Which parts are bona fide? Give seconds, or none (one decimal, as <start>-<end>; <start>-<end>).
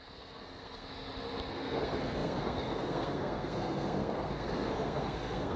0.9-1.5